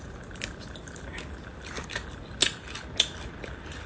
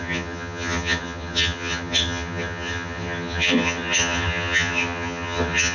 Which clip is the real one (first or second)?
first